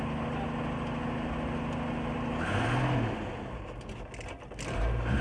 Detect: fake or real real